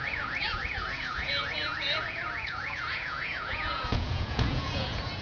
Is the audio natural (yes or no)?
no